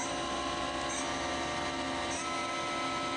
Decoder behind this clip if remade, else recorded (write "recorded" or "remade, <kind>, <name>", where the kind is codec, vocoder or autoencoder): recorded